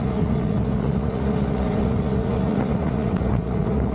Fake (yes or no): yes